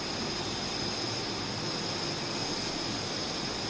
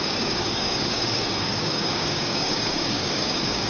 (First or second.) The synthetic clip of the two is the second